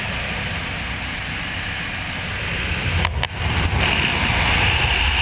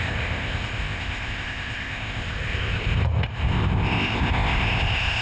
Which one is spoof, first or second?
second